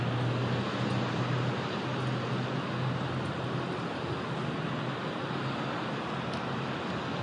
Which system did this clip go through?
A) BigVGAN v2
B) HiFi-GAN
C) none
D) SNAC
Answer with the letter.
C